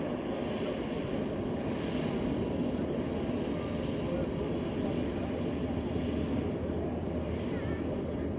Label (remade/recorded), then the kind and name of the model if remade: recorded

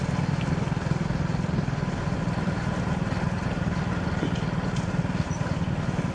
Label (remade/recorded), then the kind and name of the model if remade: recorded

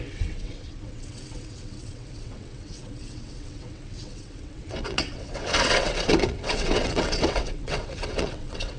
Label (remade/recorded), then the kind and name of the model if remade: remade, vocoder, WaveNeXt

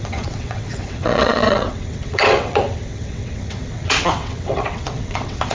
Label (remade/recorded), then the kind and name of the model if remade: remade, vocoder, WaveNeXt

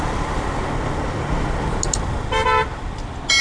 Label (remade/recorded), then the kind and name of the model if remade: recorded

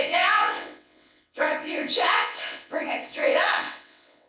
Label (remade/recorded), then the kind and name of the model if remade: remade, vocoder, WaveNeXt